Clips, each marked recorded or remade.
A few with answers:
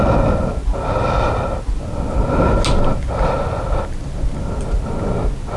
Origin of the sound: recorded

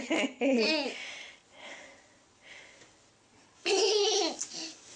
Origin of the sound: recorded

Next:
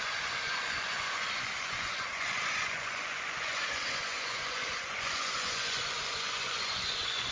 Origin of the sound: remade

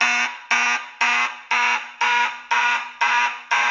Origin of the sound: recorded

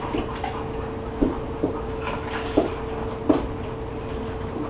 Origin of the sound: recorded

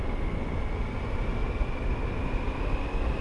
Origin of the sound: recorded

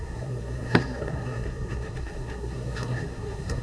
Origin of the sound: remade